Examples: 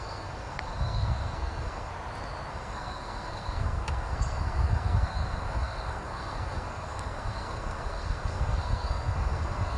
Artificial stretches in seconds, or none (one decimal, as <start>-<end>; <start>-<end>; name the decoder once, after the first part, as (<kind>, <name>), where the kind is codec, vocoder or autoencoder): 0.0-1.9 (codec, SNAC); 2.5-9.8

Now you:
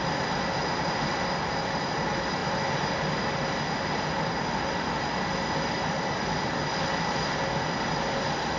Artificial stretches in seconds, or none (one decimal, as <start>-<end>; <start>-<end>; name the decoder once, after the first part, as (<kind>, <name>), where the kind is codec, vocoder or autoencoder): none

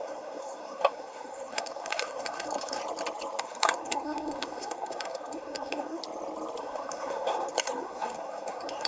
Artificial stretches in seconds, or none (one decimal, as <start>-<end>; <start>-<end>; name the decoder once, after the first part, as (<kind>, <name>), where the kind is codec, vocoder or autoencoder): 0.0-2.8 (codec, SNAC); 3.4-6.0; 6.6-8.9

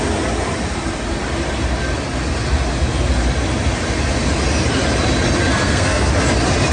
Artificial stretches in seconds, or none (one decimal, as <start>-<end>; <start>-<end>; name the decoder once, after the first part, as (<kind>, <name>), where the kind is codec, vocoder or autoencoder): 5.5-6.1 (codec, SNAC)

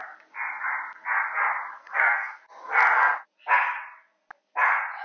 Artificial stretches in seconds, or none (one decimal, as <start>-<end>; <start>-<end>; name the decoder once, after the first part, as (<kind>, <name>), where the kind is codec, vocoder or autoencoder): 1.8-2.4 (codec, SNAC)

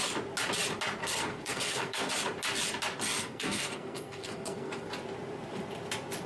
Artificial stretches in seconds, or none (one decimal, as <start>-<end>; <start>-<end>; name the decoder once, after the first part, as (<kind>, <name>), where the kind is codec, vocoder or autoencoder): 1.0-2.1 (codec, SNAC); 3.2-4.9

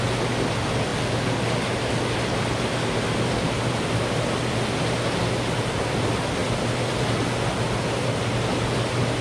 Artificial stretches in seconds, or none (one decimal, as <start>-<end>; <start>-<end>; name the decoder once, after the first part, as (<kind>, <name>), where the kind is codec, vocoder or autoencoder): none